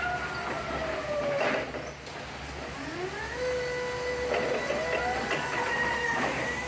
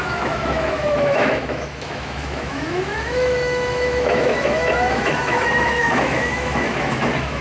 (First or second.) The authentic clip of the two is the first